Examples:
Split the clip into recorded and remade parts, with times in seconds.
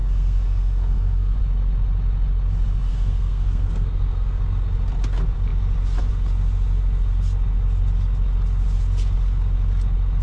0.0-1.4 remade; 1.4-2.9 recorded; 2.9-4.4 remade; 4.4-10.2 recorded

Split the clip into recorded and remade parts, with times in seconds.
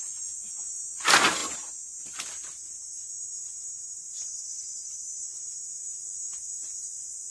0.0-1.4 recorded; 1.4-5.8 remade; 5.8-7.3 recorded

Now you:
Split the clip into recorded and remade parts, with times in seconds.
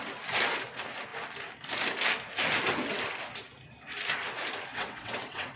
0.0-4.7 recorded; 4.7-5.6 remade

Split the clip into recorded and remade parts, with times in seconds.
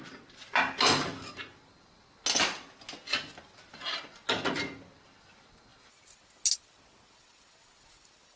0.0-8.4 recorded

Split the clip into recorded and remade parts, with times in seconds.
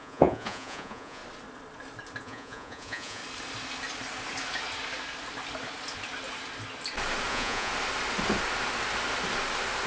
0.0-1.2 remade; 1.2-2.2 recorded; 2.2-3.2 remade; 3.2-7.3 recorded; 7.3-7.7 remade; 7.7-9.9 recorded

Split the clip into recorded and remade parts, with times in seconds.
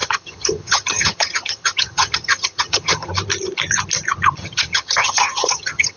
0.0-3.1 remade; 3.1-4.4 recorded; 4.4-6.0 remade